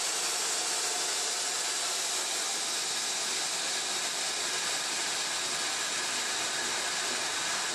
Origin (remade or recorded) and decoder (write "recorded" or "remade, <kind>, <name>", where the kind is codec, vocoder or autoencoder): recorded